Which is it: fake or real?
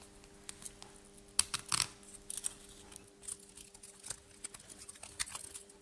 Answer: real